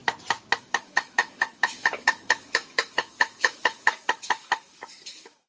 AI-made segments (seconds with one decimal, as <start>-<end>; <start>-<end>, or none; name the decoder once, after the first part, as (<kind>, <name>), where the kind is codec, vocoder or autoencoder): 0.6-5.5 (autoencoder, DAC-VAE)